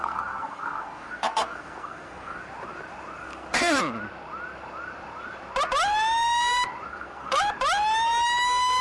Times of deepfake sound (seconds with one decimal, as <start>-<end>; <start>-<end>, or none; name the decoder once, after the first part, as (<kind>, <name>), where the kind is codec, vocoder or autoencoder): 0.0-2.4 (codec, SNAC); 3.2-3.8; 6.9-7.4

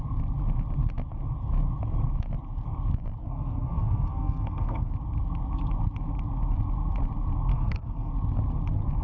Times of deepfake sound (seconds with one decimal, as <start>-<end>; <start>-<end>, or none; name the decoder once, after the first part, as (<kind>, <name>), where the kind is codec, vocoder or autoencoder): 3.2-4.9 (codec, SNAC); 7.5-8.1

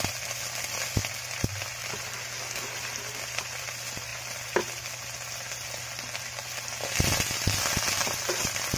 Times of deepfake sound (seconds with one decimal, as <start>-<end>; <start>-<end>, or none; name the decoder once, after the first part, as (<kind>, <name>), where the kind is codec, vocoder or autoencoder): none

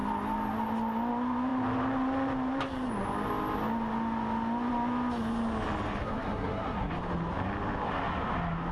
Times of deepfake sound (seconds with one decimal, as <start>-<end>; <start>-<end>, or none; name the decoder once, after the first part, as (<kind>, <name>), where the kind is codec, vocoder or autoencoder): 6.0-6.9 (codec, SNAC)

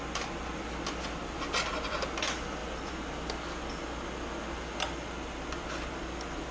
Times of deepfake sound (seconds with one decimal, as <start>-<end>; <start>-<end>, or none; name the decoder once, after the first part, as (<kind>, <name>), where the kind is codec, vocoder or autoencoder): none

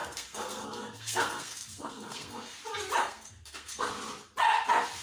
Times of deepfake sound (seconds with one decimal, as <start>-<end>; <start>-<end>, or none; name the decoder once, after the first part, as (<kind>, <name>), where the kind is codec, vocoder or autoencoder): 0.0-2.6 (codec, SNAC); 3.0-3.9

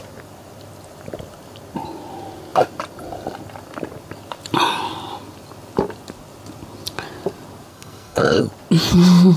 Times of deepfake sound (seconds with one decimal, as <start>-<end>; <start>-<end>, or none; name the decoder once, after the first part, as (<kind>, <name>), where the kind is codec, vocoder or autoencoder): 7.7-8.4 (codec, SNAC)

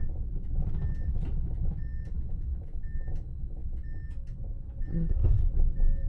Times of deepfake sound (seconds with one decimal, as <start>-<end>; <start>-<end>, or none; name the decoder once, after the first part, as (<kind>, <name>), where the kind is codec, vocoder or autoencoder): 4.9-5.5 (codec, SNAC)